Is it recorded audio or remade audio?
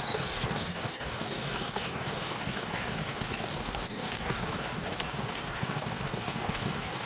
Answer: remade